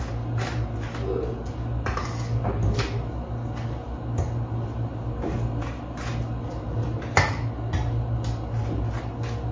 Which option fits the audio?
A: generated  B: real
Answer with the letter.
B